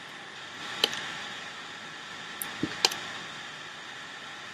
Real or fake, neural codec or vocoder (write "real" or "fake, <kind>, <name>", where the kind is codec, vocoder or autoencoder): real